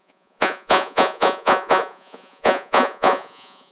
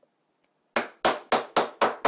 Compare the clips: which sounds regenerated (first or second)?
first